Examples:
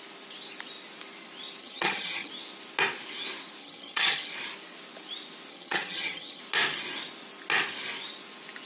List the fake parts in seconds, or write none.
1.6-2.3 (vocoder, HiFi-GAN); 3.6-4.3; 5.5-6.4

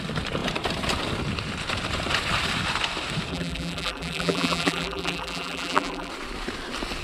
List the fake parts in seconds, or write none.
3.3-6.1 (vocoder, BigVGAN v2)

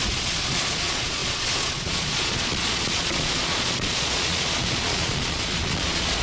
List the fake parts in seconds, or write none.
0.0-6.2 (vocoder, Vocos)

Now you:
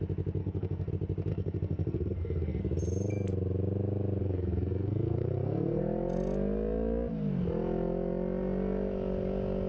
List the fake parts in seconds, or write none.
0.4-0.9 (codec, SNAC); 1.3-2.6; 4.2-5.8